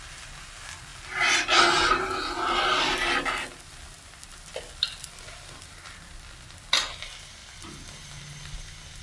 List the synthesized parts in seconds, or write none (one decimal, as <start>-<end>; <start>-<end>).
none